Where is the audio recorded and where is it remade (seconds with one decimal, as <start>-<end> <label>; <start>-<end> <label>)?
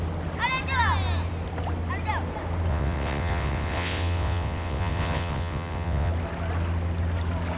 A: 0.0-2.7 recorded; 2.7-6.1 remade; 6.1-7.6 recorded